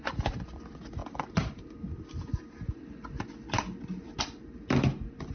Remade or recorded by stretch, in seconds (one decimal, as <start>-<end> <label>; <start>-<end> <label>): 0.0-5.3 recorded